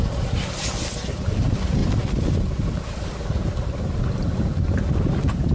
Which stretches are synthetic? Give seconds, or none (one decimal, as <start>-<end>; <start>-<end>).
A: none